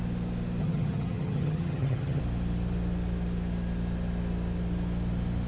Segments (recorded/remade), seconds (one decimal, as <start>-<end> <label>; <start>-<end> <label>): 0.0-0.6 recorded; 0.6-2.2 remade; 2.2-5.5 recorded